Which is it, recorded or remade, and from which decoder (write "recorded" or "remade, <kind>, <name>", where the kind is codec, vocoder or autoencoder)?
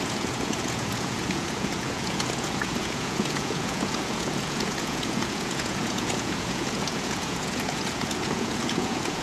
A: remade, vocoder, Vocos